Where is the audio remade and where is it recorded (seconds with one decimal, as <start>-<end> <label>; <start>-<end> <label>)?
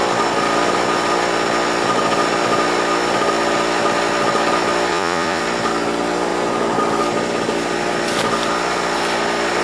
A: 0.0-4.9 recorded; 4.9-5.4 remade; 5.4-9.6 recorded